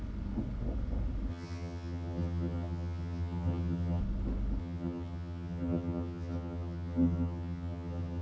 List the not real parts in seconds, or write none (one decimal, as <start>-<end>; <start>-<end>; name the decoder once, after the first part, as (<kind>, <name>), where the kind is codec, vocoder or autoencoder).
1.3-4.0 (vocoder, HiFi-GAN); 4.6-8.2